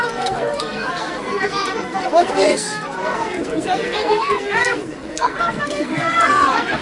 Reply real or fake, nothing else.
fake